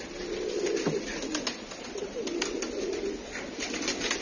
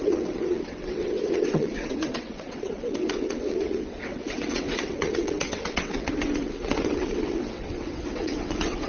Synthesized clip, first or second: second